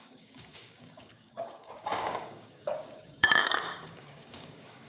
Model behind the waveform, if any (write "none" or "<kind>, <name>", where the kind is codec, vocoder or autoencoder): codec, DAC